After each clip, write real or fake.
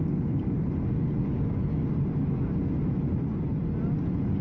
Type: real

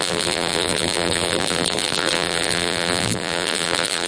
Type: fake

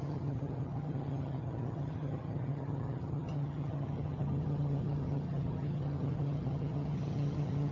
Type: fake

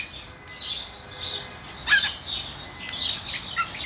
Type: real